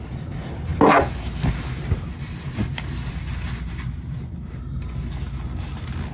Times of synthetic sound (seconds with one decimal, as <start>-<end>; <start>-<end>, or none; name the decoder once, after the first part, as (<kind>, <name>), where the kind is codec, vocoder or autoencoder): none